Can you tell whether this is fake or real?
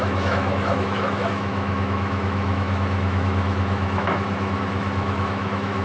fake